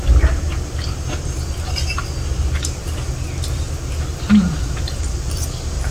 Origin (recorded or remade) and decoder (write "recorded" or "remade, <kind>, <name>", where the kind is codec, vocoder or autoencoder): recorded